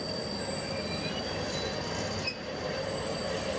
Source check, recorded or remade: recorded